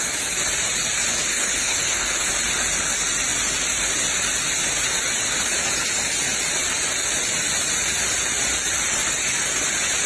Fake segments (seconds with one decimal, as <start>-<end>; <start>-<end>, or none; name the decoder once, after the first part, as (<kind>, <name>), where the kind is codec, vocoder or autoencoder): 1.3-2.3 (codec, HILCodec)